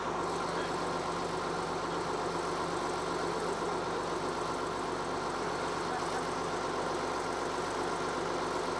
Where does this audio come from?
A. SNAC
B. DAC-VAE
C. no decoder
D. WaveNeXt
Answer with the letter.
C